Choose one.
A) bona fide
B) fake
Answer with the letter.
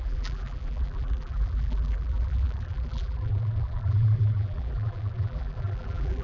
B